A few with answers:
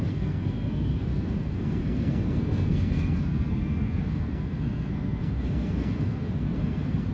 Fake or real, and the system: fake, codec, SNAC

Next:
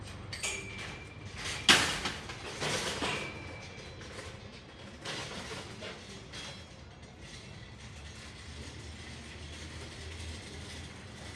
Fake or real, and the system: real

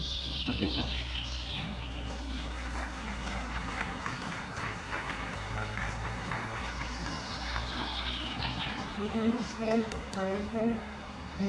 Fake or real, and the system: fake, codec, SNAC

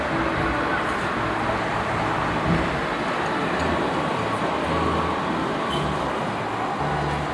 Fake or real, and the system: real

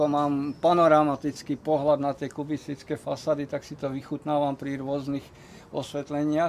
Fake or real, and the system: real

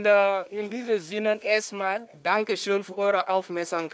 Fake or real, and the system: fake, codec, SNAC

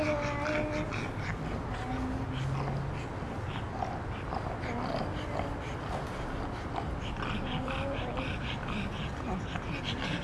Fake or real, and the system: real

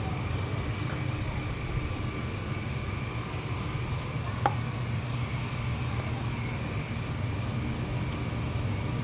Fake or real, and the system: real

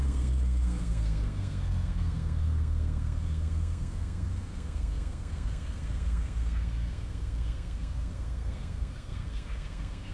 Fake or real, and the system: fake, codec, SNAC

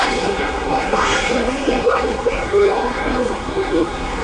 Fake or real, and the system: fake, codec, SNAC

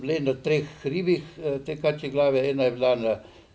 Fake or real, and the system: real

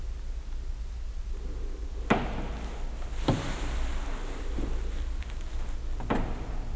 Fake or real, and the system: real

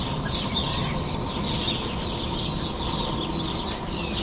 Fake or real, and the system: real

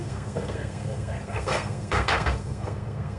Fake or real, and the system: fake, codec, SNAC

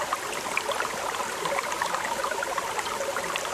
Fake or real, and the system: real